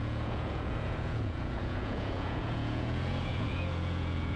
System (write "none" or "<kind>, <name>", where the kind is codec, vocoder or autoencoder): vocoder, Vocos